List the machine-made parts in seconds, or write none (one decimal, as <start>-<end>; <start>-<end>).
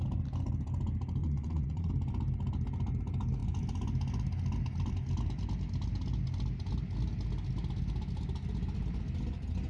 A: 1.2-1.9